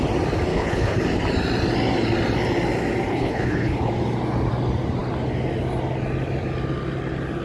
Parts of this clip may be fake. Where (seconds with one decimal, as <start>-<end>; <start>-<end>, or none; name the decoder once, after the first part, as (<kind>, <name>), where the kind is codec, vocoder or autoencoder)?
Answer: 0.5-1.0 (codec, HILCodec); 3.1-3.9